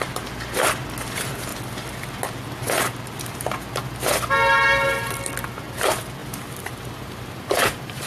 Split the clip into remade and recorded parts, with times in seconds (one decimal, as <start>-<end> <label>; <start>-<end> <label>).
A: 0.0-6.2 recorded; 6.2-8.1 remade